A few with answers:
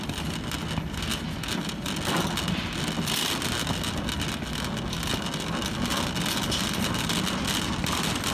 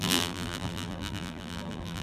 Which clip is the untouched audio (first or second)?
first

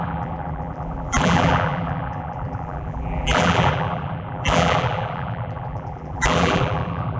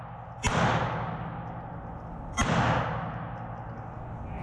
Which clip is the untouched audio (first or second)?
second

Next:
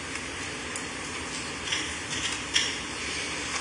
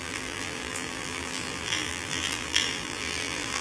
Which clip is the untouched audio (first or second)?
first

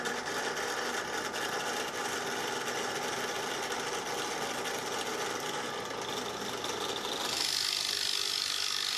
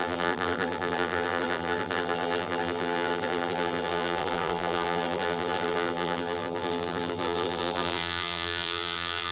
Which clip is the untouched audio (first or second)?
first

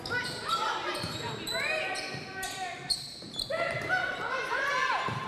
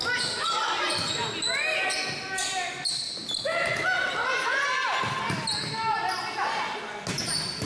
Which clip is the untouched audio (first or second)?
second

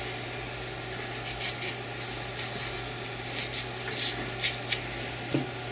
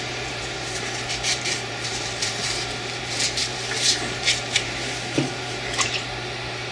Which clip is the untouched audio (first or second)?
first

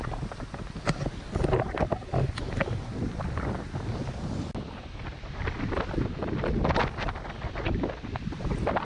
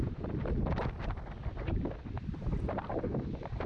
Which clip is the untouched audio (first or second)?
first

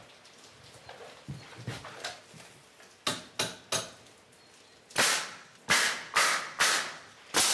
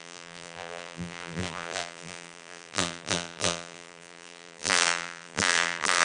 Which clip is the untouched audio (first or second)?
first